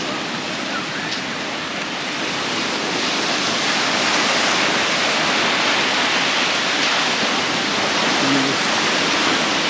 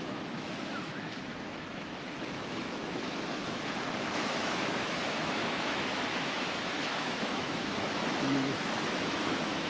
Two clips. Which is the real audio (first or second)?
first